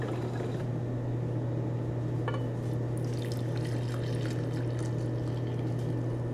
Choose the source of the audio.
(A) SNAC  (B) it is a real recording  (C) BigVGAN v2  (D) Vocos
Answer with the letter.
B